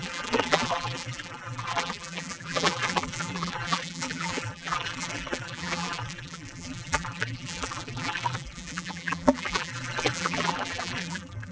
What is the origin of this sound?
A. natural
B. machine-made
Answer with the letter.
B